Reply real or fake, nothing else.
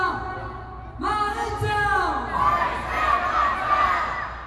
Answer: real